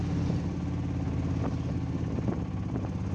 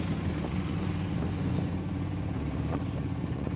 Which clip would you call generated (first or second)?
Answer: second